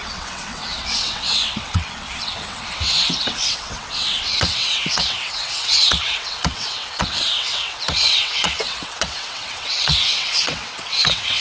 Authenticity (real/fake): fake